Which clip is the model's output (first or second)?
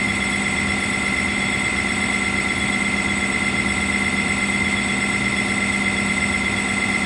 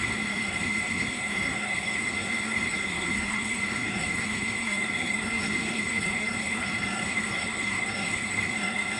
second